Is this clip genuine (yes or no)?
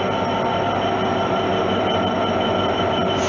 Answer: yes